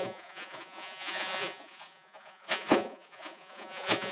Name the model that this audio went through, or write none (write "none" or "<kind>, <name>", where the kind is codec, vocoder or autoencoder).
vocoder, Vocos